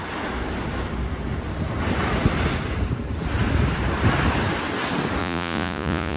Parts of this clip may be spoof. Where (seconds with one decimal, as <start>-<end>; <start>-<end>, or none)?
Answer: 5.2-6.2